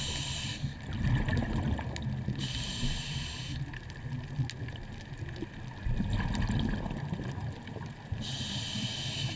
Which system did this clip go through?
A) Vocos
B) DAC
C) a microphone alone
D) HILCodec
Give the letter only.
C